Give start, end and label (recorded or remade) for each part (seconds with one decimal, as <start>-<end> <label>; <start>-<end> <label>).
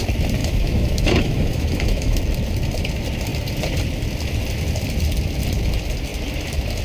0.0-0.4 recorded; 0.4-2.2 remade; 2.2-6.8 recorded